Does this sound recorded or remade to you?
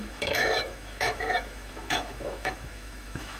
remade